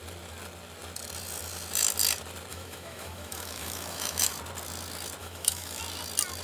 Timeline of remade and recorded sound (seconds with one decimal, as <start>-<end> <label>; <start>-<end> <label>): 0.0-2.5 recorded; 2.5-4.3 remade; 4.3-5.2 recorded; 5.2-5.8 remade; 5.8-6.4 recorded